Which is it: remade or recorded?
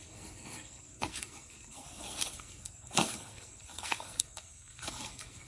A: remade